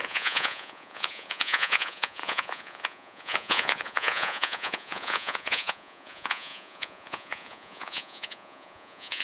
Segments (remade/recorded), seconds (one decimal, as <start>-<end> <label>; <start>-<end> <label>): 0.0-9.2 remade